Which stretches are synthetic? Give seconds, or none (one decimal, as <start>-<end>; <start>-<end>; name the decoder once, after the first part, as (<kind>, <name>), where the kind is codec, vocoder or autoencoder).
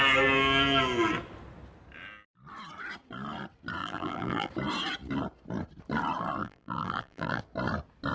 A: 3.8-4.5 (vocoder, BigVGAN v2); 6.4-7.4